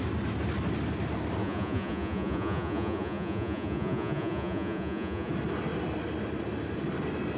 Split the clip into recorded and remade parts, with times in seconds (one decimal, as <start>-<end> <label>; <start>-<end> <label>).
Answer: 0.0-1.4 recorded; 1.4-5.3 remade; 5.3-7.4 recorded